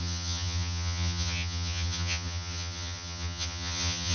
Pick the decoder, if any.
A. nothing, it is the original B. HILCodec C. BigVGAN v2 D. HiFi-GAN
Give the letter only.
D